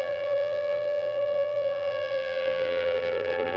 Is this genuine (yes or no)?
no